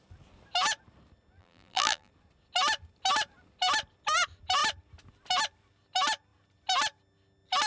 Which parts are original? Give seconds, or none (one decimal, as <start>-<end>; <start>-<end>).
0.0-1.4; 2.1-7.7